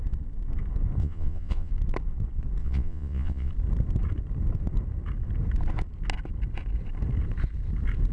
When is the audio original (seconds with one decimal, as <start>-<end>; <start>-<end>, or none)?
0.0-1.0; 1.7-2.6; 3.5-8.1